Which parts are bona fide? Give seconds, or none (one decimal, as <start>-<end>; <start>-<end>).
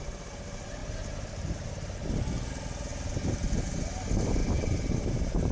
0.8-1.3; 2.0-2.5